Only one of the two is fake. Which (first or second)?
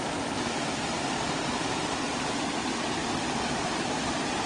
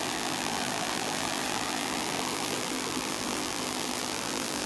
second